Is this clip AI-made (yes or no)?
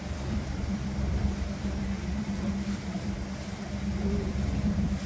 yes